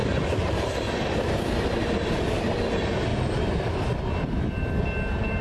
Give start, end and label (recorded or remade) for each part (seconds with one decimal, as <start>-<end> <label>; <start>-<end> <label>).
0.0-5.4 recorded